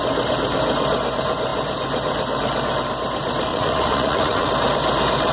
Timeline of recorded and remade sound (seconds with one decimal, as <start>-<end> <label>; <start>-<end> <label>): 0.0-3.5 recorded; 3.5-4.5 remade; 4.5-5.3 recorded